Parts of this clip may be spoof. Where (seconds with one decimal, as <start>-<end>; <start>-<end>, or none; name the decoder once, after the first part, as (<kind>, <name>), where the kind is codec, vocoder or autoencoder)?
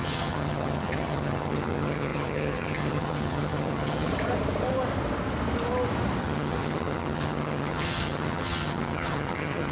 0.0-4.1 (vocoder, HiFi-GAN); 6.2-9.7